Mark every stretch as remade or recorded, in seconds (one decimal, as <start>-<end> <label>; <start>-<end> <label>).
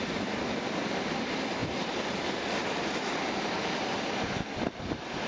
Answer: 0.0-5.3 remade